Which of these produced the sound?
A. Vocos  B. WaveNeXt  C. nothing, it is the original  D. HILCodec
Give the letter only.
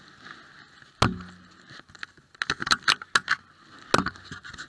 C